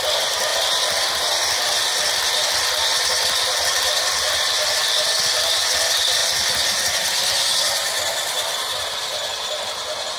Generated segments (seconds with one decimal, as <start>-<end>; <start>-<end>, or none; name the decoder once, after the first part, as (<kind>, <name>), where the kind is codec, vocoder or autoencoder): none